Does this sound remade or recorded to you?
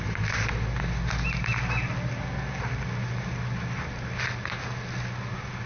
recorded